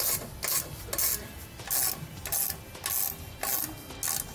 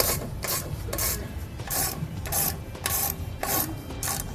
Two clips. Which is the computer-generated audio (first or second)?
second